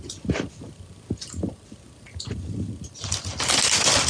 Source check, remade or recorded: recorded